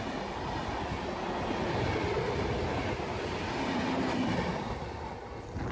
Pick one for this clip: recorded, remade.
recorded